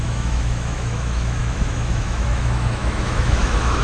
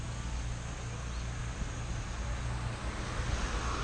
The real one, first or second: second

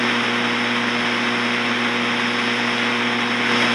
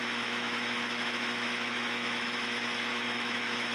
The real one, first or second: first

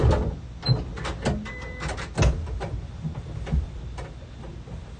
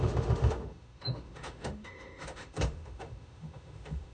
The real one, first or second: first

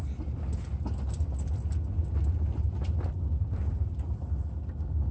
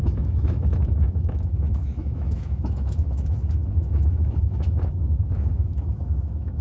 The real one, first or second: first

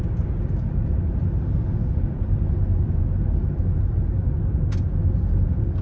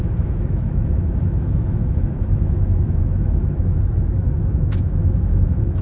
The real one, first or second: first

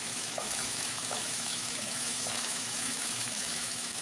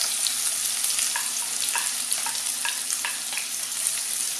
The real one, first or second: second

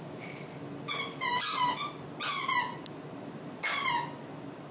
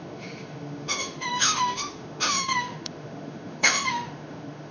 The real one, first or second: first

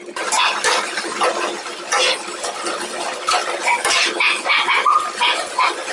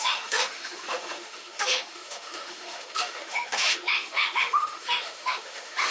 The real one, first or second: first